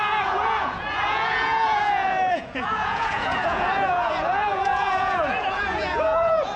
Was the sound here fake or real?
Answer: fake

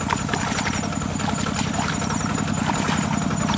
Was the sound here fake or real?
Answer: real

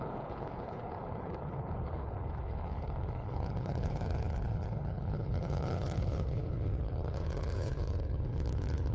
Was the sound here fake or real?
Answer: fake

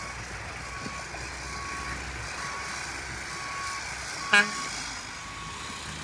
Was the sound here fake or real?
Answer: real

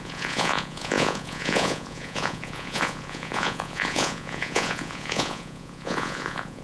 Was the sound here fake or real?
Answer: fake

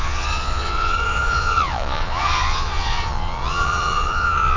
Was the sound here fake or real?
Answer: fake